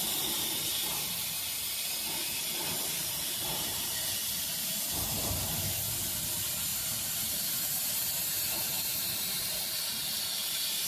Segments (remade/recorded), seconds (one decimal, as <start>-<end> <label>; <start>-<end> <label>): 0.0-3.0 recorded; 3.0-3.9 remade; 3.9-6.7 recorded; 6.7-7.4 remade; 7.4-10.9 recorded